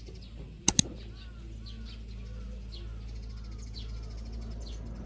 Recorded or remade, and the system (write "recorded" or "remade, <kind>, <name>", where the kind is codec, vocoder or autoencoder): recorded